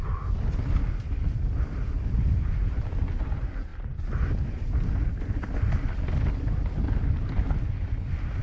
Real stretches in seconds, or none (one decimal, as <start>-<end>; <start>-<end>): 0.0-8.4